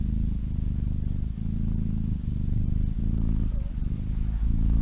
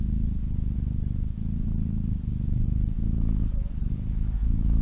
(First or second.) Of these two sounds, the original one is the first